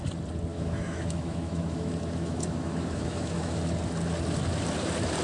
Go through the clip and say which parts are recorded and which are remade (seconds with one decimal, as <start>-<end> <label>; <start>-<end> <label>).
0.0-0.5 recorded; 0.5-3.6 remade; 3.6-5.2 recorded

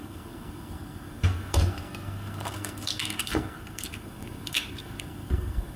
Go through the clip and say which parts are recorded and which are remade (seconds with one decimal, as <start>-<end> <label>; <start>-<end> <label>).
0.0-5.8 remade

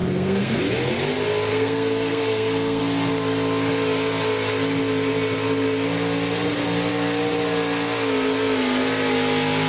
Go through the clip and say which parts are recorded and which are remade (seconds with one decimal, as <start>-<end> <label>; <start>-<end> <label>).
0.0-0.6 remade; 0.6-1.5 recorded; 1.5-2.8 remade; 2.8-9.7 recorded

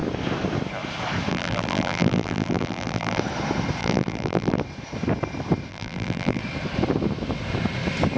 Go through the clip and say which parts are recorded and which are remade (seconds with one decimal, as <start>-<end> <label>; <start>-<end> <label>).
0.0-1.3 recorded; 1.3-3.2 remade; 3.2-3.8 recorded; 3.8-4.6 remade; 4.6-5.7 recorded; 5.7-6.4 remade; 6.4-8.2 recorded

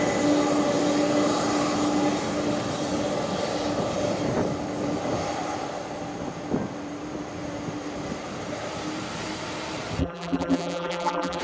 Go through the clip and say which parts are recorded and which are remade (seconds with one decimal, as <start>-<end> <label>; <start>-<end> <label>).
0.0-10.0 recorded; 10.0-11.4 remade

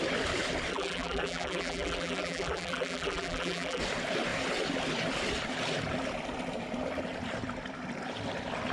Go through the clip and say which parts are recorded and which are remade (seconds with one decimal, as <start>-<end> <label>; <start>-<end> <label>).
0.0-0.7 recorded; 0.7-3.8 remade; 3.8-8.7 recorded

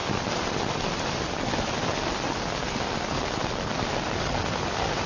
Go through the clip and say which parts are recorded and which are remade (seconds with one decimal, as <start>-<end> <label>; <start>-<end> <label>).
0.0-5.1 recorded

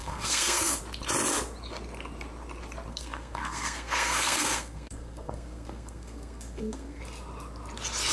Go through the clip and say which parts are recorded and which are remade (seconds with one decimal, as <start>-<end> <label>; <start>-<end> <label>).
0.0-0.8 remade; 0.8-2.9 recorded; 2.9-7.0 remade; 7.0-8.1 recorded